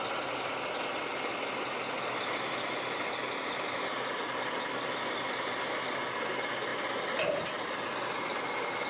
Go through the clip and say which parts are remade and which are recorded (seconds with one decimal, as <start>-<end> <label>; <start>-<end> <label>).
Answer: 0.0-8.9 recorded